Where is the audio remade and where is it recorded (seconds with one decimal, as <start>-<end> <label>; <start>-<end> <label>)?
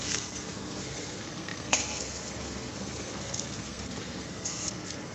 0.0-5.1 remade